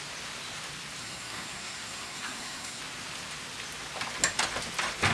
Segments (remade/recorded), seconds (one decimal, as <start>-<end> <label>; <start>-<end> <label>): 0.0-1.0 recorded; 1.0-2.8 remade; 2.8-5.1 recorded